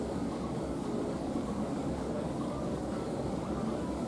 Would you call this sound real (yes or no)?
no